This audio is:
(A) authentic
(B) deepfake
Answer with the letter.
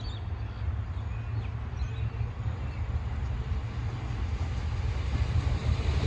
A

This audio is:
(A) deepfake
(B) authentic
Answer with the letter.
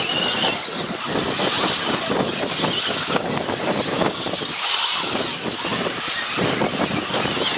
B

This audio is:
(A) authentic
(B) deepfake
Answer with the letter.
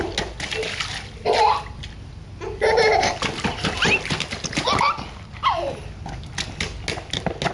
A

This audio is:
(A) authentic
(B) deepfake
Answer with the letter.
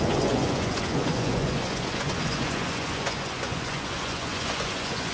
B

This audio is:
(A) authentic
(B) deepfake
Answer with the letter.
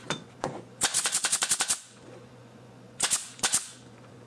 B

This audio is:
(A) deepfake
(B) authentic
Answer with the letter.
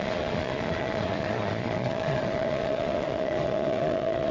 A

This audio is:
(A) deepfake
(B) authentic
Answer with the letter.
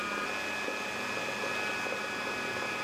B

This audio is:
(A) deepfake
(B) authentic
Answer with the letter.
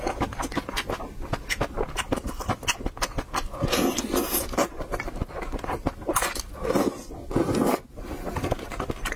B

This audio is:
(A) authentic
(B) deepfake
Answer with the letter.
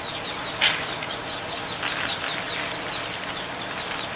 A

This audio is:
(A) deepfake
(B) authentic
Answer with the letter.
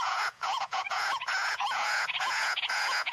A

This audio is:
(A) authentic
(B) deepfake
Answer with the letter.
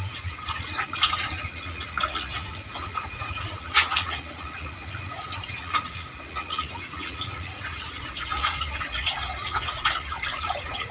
B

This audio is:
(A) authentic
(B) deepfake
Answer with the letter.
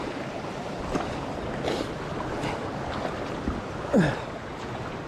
A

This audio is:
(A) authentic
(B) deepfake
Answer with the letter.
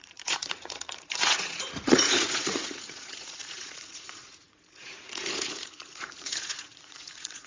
B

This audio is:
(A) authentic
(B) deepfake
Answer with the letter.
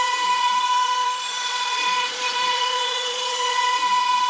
B